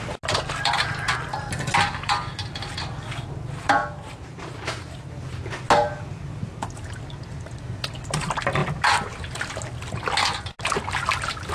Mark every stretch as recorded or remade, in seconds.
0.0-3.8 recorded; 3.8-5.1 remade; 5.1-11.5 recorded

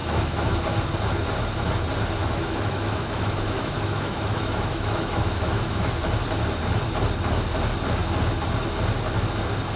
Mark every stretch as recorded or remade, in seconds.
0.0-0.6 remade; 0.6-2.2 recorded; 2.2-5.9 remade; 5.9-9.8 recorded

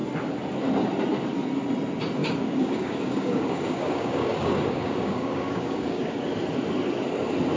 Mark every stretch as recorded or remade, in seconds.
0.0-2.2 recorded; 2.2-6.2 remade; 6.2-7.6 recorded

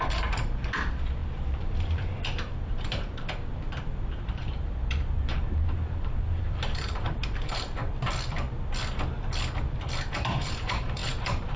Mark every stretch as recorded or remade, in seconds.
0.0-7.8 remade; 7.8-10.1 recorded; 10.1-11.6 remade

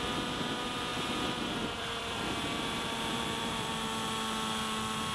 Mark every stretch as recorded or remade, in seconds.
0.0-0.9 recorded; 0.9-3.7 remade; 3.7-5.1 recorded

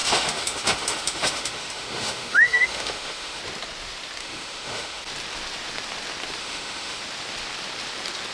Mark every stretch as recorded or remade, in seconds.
0.0-3.4 remade; 3.4-4.2 recorded; 4.2-5.0 remade; 5.0-6.4 recorded; 6.4-7.0 remade; 7.0-8.3 recorded

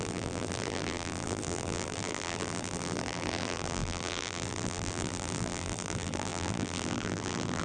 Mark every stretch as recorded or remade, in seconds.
0.0-7.6 remade